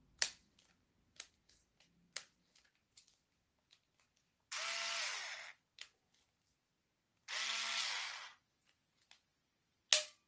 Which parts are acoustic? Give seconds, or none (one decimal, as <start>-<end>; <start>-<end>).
0.0-10.3